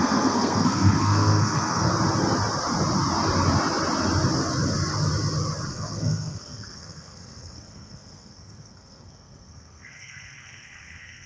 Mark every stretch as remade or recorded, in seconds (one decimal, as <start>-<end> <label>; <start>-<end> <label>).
0.0-1.9 remade; 1.9-5.7 recorded; 5.7-11.3 remade